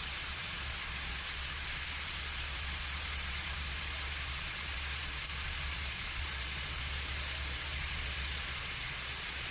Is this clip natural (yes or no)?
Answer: no